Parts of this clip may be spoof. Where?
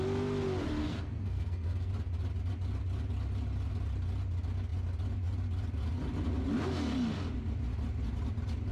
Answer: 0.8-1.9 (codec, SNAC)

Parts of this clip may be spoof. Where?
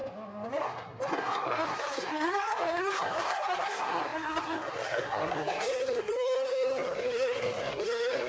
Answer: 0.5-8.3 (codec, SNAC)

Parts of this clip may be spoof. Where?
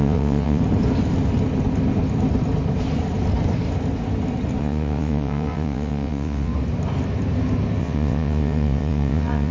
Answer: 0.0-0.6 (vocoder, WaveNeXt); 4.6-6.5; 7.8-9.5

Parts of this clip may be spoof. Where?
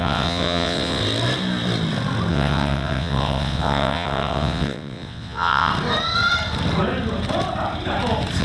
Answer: 0.0-1.0 (vocoder, WaveNeXt); 2.3-5.7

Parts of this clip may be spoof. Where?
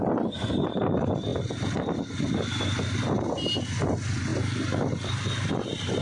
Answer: 0.0-1.3 (vocoder, BigVGAN v2); 2.8-6.0